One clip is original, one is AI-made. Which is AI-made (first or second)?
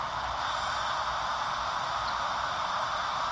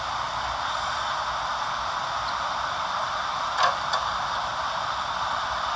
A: second